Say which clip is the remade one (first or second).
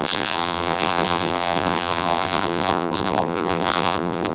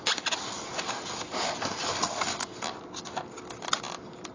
first